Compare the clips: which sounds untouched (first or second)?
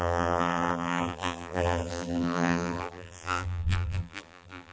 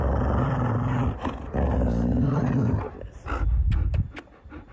second